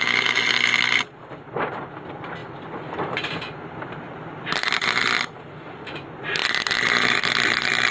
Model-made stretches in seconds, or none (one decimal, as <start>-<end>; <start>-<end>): none